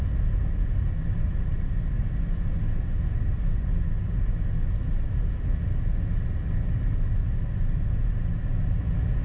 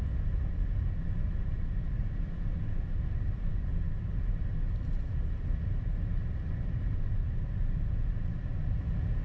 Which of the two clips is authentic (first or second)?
first